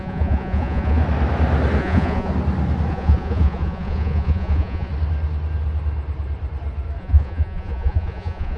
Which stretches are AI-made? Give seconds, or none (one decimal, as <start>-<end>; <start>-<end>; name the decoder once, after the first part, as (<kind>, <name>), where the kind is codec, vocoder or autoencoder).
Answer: 0.0-1.0 (vocoder, Vocos); 1.8-2.3; 2.9-4.9; 7.0-8.6